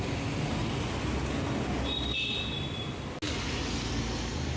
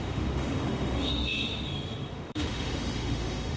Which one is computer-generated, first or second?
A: second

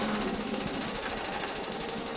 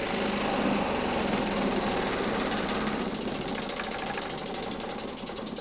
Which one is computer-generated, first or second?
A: first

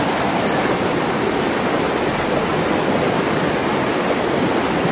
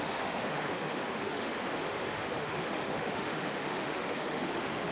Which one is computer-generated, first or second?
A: second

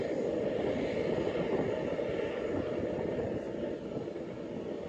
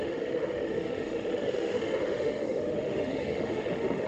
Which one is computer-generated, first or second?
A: second